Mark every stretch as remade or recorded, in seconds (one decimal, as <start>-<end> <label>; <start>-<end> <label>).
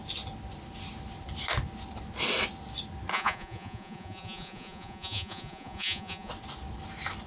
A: 0.0-3.1 recorded; 3.1-6.3 remade; 6.3-7.3 recorded